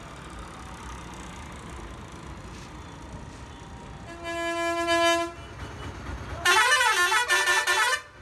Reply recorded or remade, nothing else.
recorded